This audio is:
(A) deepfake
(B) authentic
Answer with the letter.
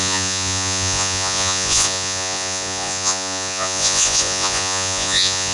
A